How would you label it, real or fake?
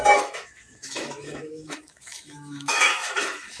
fake